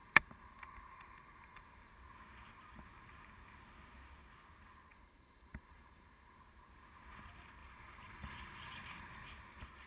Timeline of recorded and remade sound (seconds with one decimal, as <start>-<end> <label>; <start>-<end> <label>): 0.0-1.9 remade; 1.9-4.9 recorded; 4.9-6.4 remade; 6.4-7.6 recorded; 7.6-8.7 remade; 8.7-9.9 recorded

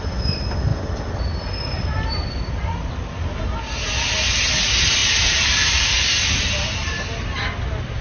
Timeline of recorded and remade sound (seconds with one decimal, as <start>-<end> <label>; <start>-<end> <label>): 0.0-5.0 recorded; 5.0-6.7 remade; 6.7-8.0 recorded

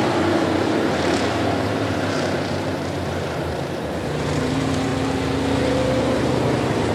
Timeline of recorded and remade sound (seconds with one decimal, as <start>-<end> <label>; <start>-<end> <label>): 0.0-4.9 remade; 4.9-5.9 recorded; 5.9-6.9 remade